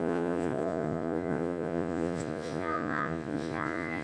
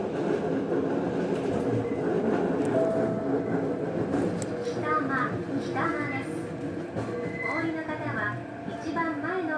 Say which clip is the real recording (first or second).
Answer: second